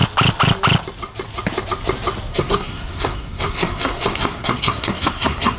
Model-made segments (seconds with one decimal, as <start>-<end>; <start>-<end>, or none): 2.3-5.6